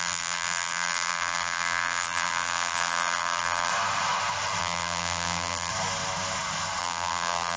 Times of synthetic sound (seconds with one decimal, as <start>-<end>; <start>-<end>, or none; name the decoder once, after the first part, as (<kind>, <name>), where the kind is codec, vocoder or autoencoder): 0.0-3.7 (vocoder, BigVGAN v2); 4.6-5.7; 6.8-7.6